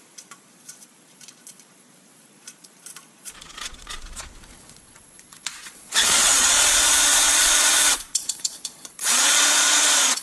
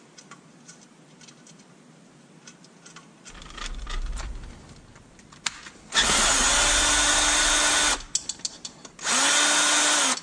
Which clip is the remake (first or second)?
first